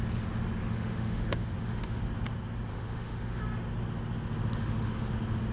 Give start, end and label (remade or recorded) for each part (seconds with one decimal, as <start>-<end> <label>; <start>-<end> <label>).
0.0-0.6 recorded; 0.6-2.0 remade; 2.0-2.7 recorded; 2.7-3.4 remade; 3.4-4.6 recorded; 4.6-5.1 remade; 5.1-5.5 recorded